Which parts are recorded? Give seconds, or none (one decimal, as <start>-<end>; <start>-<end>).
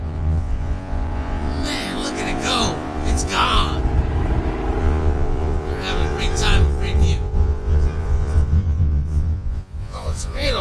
3.7-4.8